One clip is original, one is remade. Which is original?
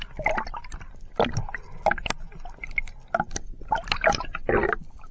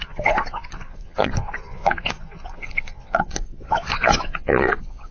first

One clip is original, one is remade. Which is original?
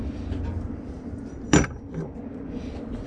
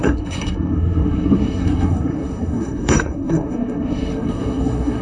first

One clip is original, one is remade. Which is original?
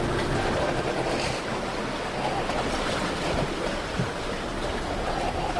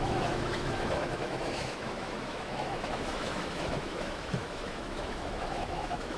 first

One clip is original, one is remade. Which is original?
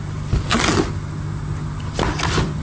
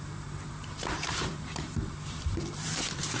first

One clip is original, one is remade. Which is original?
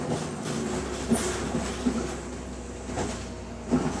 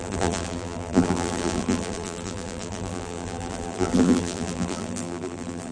first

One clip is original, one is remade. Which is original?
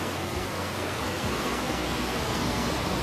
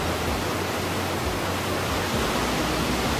second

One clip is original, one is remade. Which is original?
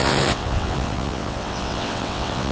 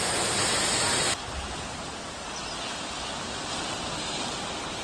second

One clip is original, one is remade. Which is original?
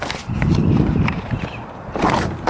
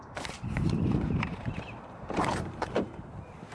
first